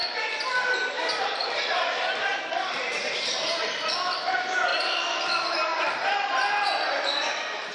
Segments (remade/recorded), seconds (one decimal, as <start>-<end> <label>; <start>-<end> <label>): 0.0-1.2 recorded; 1.2-4.7 remade; 4.7-7.3 recorded; 7.3-7.7 remade